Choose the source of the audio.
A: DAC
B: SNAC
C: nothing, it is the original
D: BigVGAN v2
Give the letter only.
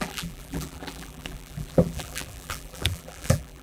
D